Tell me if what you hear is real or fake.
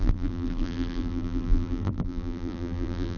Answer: fake